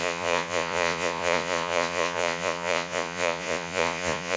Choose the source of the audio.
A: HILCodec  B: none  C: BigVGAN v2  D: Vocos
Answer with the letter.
D